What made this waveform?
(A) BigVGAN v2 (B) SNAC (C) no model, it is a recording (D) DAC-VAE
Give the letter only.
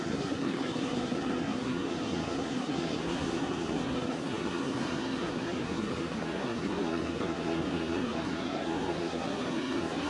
B